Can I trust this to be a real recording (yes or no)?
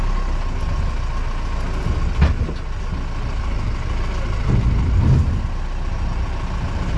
yes